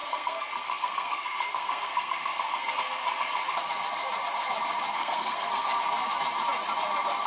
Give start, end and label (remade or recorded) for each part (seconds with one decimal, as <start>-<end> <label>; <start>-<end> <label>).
0.0-2.7 remade; 2.7-4.9 recorded; 4.9-5.8 remade; 5.8-7.3 recorded